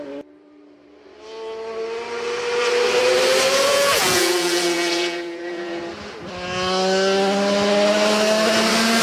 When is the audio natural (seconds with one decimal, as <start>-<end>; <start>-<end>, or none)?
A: 0.0-3.7; 5.8-9.0